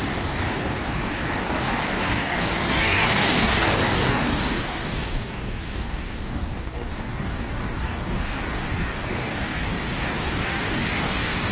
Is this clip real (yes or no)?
no